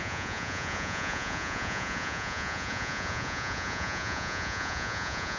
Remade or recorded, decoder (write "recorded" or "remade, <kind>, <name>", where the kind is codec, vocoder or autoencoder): remade, vocoder, Vocos